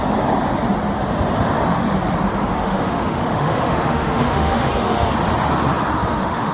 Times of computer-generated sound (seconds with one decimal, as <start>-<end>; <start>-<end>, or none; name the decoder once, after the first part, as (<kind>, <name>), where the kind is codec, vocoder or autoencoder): 2.5-5.1 (autoencoder, DAC-VAE); 6.0-6.5